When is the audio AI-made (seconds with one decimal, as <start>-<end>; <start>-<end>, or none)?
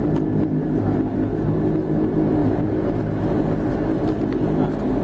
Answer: none